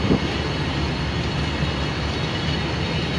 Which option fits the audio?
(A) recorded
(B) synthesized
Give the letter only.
A